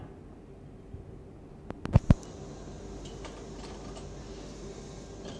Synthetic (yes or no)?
no